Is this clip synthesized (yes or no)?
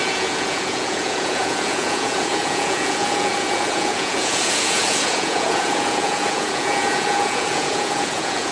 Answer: yes